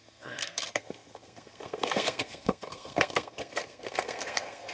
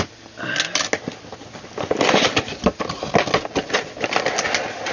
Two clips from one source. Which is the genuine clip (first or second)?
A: second